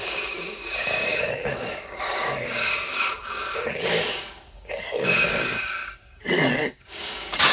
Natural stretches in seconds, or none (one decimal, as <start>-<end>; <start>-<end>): none